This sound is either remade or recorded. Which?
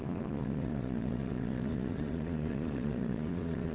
remade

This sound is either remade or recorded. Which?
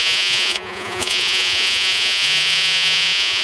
remade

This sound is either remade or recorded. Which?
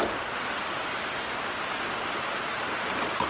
recorded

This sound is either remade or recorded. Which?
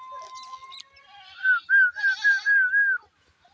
recorded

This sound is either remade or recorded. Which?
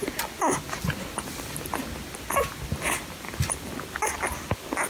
recorded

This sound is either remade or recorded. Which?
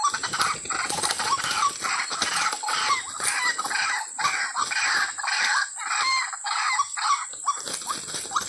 recorded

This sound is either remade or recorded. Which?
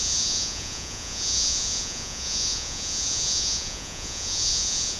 remade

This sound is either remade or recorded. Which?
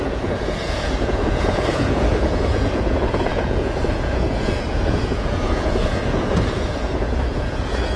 remade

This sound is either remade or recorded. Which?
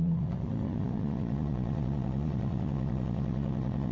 remade